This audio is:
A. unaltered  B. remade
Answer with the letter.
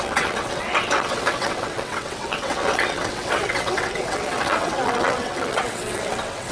B